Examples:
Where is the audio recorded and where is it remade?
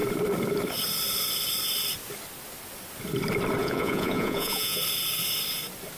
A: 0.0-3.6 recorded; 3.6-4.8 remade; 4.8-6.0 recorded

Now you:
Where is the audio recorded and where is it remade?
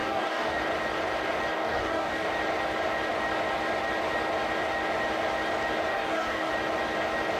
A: 0.0-0.6 remade; 0.6-1.5 recorded; 1.5-2.3 remade; 2.3-5.9 recorded; 5.9-6.5 remade; 6.5-7.4 recorded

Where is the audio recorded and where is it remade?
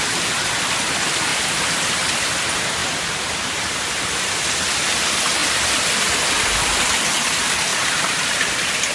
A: 0.0-1.3 recorded; 1.3-1.8 remade; 1.8-2.8 recorded; 2.8-4.0 remade; 4.0-7.7 recorded; 7.7-8.5 remade; 8.5-8.9 recorded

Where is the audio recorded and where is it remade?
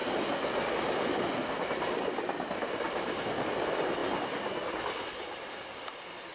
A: 0.0-4.0 remade; 4.0-5.7 recorded; 5.7-6.3 remade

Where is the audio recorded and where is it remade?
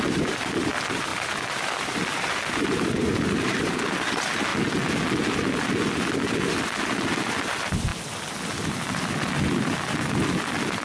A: 0.0-4.5 remade; 4.5-6.9 recorded; 6.9-7.9 remade; 7.9-8.8 recorded; 8.8-10.8 remade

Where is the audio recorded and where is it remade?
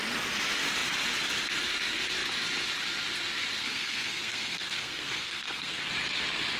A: 0.0-3.6 recorded; 3.6-5.9 remade; 5.9-6.6 recorded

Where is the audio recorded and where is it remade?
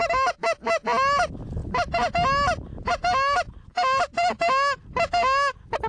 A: 0.0-5.9 recorded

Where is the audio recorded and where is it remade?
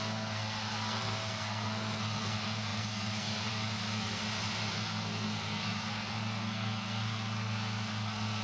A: 0.0-4.2 remade; 4.2-4.7 recorded; 4.7-8.4 remade